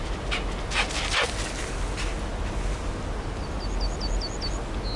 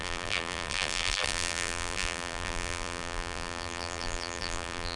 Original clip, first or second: first